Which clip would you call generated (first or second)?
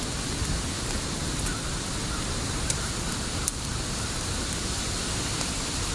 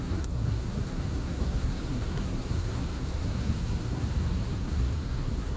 second